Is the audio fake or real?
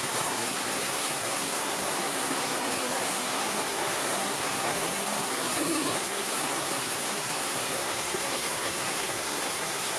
fake